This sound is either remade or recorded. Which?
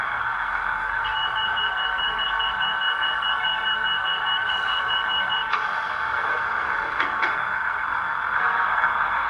remade